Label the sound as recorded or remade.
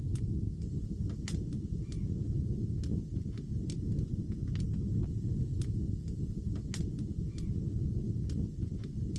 recorded